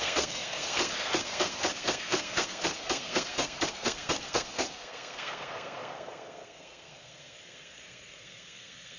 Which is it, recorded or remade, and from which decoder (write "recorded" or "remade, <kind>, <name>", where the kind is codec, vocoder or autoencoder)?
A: remade, codec, SNAC